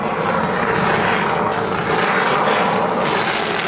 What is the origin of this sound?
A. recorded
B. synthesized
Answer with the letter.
A